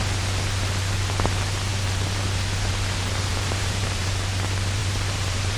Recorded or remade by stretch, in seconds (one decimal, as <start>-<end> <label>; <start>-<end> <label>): 0.0-3.3 recorded; 3.3-4.1 remade; 4.1-4.8 recorded; 4.8-5.6 remade